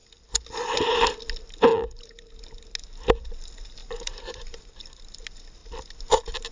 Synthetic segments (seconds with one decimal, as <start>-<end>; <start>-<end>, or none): 1.7-2.3; 3.8-5.0